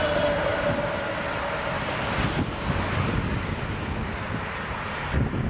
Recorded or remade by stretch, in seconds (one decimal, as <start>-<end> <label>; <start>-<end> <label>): 0.0-5.5 recorded